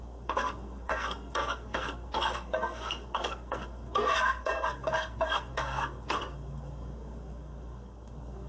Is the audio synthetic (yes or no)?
yes